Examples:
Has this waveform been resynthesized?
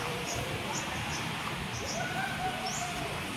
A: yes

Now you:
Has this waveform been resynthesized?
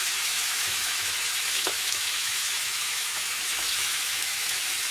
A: yes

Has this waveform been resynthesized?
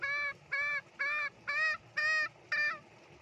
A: no